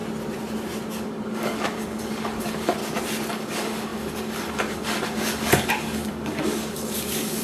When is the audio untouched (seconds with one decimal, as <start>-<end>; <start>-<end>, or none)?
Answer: 0.0-0.9; 2.8-3.3